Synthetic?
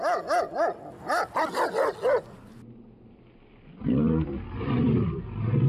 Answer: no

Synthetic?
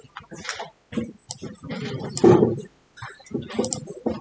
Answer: no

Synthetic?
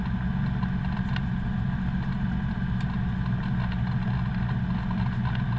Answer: no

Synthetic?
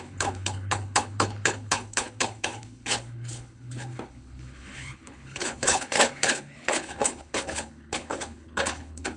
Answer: yes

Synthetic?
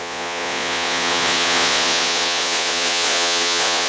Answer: yes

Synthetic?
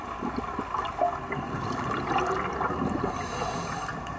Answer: no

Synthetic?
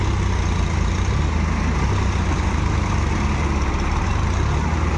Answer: no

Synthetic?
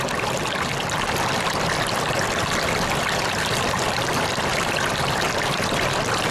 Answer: no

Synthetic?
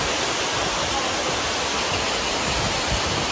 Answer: no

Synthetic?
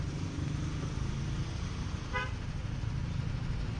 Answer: no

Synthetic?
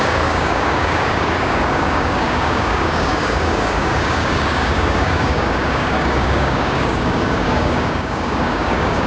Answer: yes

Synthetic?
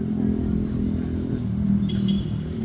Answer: no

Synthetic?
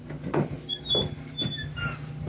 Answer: no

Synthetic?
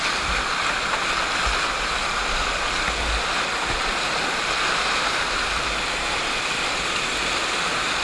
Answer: no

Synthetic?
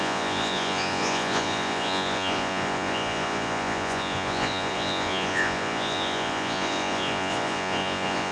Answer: yes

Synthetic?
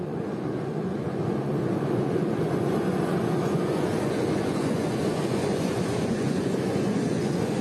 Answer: yes